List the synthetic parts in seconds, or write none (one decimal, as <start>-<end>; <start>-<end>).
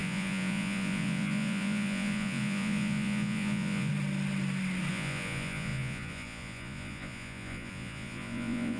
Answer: 0.0-3.9; 4.9-8.8